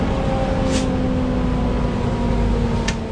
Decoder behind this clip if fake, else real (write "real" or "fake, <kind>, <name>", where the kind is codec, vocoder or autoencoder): real